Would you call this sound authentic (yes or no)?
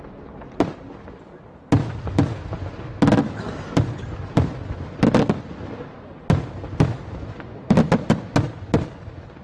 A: yes